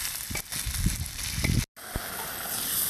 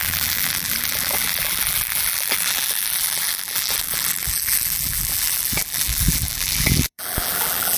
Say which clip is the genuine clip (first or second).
first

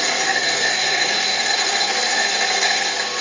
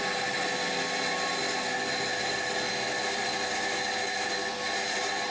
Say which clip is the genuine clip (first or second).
second